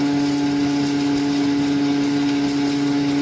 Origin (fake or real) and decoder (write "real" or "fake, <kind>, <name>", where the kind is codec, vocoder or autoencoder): real